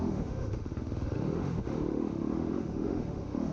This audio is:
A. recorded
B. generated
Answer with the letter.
B